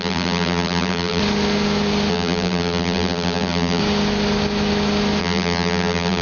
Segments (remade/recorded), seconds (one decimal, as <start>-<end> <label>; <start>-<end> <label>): 0.0-1.2 remade; 1.2-2.1 recorded; 2.1-3.8 remade; 3.8-5.2 recorded; 5.2-6.2 remade